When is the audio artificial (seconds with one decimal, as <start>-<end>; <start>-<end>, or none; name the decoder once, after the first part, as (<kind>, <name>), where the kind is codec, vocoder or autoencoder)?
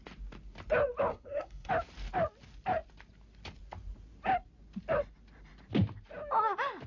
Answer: 1.1-1.7 (codec, SNAC)